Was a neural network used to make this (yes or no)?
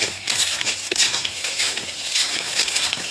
yes